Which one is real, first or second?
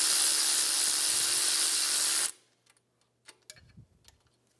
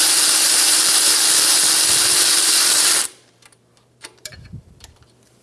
first